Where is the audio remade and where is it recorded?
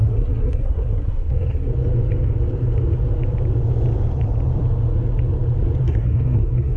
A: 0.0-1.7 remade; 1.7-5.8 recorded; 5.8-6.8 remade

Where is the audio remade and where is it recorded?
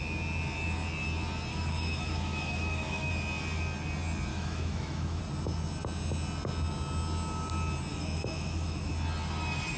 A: 0.0-1.5 recorded; 1.5-3.1 remade; 3.1-4.3 recorded; 4.3-5.2 remade; 5.2-7.9 recorded; 7.9-8.9 remade; 8.9-9.8 recorded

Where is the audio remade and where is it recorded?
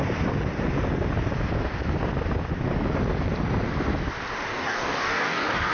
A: 0.0-4.5 recorded; 4.5-5.7 remade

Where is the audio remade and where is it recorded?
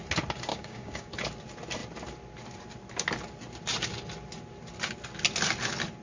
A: 0.0-0.5 recorded; 0.5-1.1 remade; 1.1-6.0 recorded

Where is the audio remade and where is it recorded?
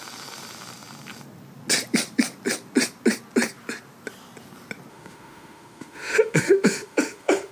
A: 0.0-4.9 recorded; 4.9-7.5 remade